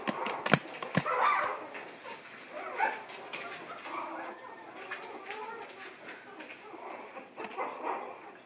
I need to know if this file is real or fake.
real